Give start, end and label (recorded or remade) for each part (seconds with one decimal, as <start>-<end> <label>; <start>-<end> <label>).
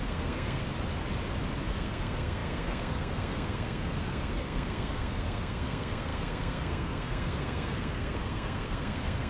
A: 0.0-0.6 remade; 0.6-1.7 recorded; 1.7-9.3 remade